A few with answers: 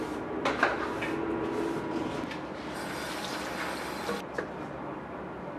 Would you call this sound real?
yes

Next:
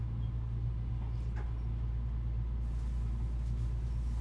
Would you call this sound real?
yes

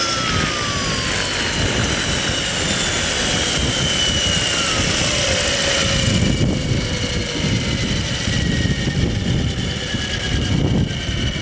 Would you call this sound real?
yes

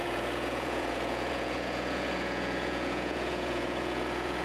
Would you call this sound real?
no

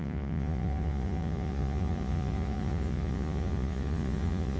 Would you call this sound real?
no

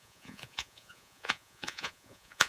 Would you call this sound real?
no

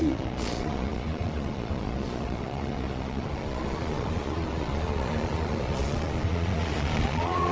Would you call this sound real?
no